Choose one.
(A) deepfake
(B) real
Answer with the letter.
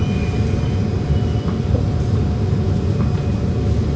B